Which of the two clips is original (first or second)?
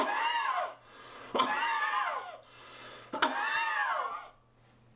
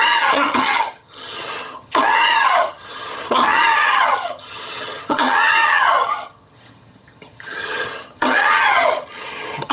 first